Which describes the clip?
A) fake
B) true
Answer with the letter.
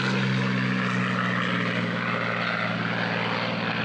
B